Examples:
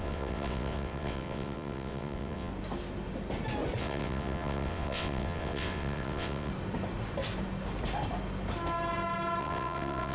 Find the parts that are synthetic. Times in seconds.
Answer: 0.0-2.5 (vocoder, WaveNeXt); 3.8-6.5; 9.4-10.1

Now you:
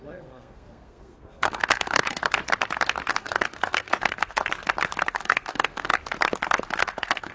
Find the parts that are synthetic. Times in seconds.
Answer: 0.0-2.2 (codec, SNAC); 3.1-4.4; 5.1-6.0; 6.8-7.3

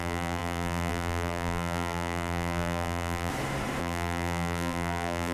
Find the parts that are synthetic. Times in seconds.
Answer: 0.0-3.3 (vocoder, BigVGAN v2); 3.8-5.3

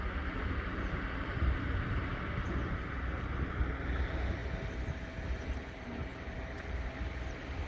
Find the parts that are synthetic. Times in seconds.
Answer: none

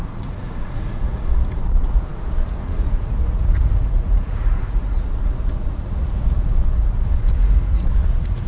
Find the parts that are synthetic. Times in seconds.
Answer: 0.0-8.5 (vocoder, Vocos)

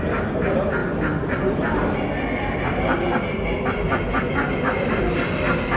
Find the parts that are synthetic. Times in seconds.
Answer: none

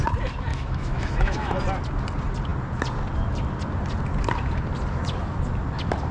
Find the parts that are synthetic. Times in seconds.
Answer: 0.5-1.6 (autoencoder, DAC-VAE)

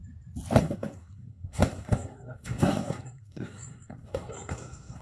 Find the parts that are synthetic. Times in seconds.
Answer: 0.6-5.0 (codec, SNAC)